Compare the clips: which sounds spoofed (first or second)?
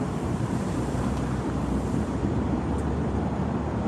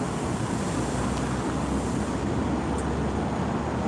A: first